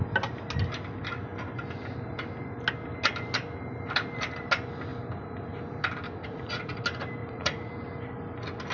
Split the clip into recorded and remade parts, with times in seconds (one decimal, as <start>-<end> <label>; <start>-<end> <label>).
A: 0.0-6.2 recorded; 6.2-6.8 remade; 6.8-7.2 recorded; 7.2-7.7 remade; 7.7-8.7 recorded